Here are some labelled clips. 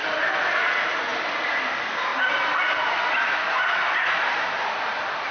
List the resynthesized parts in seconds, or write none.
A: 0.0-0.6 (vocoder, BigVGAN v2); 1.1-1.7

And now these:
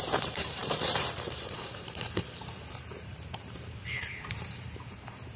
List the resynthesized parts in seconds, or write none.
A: 0.0-5.4 (vocoder, BigVGAN v2)

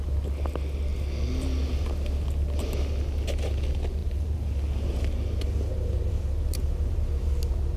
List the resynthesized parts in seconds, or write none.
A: 4.0-4.5 (vocoder, BigVGAN v2)

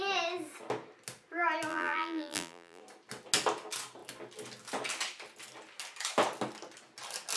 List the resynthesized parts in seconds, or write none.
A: 1.7-2.8 (vocoder, BigVGAN v2)

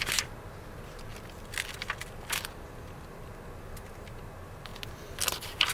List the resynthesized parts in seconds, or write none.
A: none

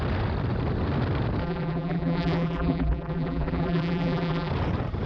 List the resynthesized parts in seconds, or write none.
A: 1.4-4.5 (vocoder, BigVGAN v2)

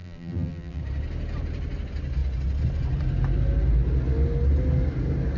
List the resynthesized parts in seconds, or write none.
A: 0.0-0.8 (vocoder, BigVGAN v2)

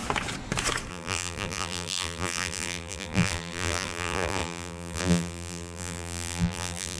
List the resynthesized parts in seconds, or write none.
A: 0.9-7.0 (vocoder, BigVGAN v2)